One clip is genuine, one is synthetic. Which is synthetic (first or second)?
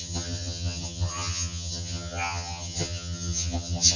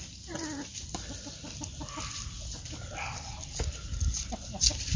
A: first